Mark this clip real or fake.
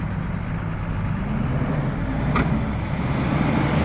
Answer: real